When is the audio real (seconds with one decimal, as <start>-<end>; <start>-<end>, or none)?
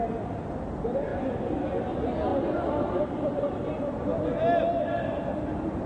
0.0-5.9